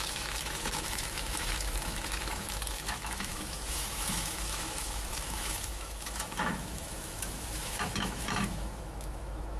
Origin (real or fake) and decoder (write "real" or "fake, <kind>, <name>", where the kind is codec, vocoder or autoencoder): fake, autoencoder, DAC-VAE